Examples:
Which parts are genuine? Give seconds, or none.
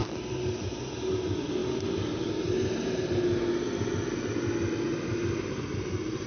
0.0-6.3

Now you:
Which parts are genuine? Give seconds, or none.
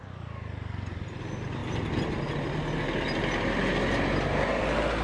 0.0-5.0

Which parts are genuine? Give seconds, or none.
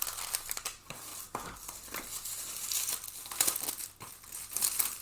0.0-5.0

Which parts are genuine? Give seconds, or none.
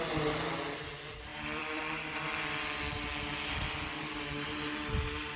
0.0-1.3; 1.8-5.4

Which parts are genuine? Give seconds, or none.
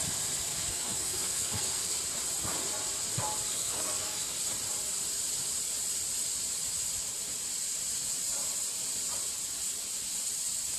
0.0-0.5; 2.0-3.5; 4.2-10.8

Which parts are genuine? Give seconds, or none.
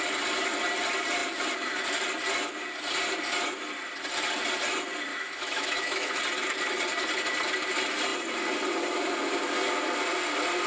0.0-5.1; 6.2-10.7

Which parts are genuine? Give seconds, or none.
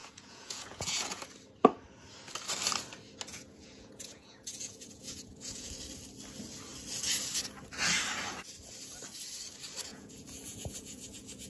1.2-3.3; 5.7-9.9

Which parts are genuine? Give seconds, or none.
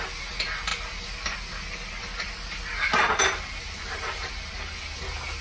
0.0-5.4